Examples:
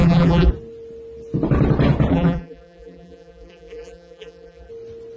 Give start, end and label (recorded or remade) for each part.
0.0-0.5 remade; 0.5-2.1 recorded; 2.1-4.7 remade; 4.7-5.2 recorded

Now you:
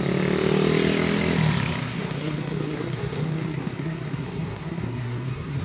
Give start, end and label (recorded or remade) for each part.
0.0-1.8 recorded; 1.8-5.6 remade

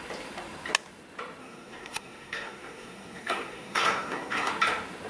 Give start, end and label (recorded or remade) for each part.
0.0-1.4 recorded; 1.4-4.5 remade; 4.5-5.1 recorded

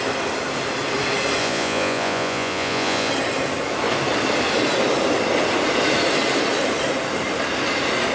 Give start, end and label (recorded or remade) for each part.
0.0-1.4 recorded; 1.4-3.1 remade; 3.1-8.1 recorded